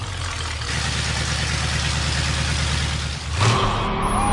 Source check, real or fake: real